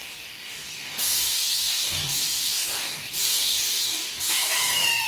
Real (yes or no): no